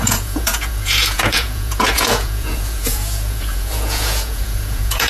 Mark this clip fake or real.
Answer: fake